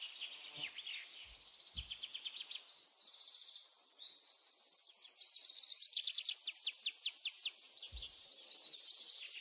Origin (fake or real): real